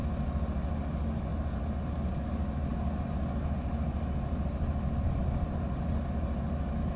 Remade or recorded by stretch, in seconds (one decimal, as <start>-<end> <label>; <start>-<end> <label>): 0.0-7.0 recorded